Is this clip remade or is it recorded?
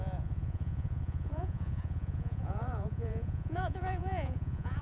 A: remade